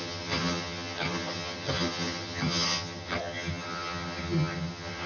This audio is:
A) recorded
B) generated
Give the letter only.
B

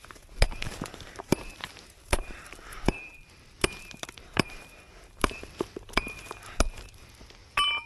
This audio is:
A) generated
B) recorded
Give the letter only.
A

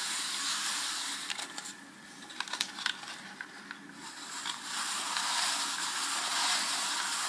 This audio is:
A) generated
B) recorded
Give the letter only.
B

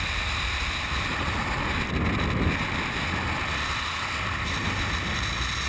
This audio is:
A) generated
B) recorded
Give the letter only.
B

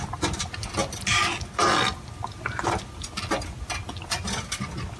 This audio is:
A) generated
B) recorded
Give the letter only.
B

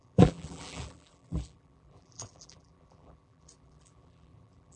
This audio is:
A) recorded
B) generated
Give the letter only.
B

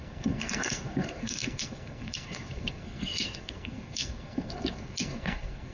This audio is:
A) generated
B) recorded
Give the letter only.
A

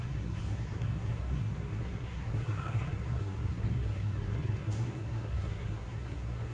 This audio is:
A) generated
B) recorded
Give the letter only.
A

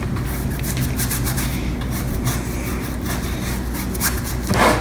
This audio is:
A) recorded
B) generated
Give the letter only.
A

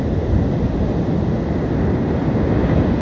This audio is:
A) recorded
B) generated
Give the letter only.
A